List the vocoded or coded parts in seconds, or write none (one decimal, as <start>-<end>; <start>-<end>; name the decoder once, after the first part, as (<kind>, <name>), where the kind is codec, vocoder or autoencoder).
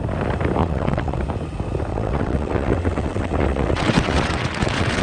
0.6-1.2 (vocoder, WaveNeXt); 1.9-5.0